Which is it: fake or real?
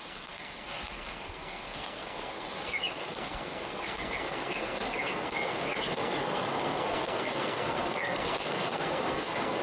fake